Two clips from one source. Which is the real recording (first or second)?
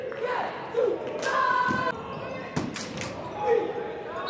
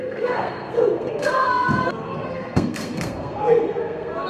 first